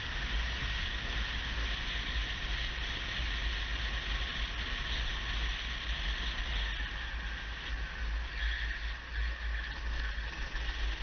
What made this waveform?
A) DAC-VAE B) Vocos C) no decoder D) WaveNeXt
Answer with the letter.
C